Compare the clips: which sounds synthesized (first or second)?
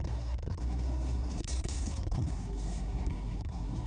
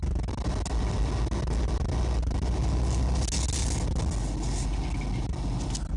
first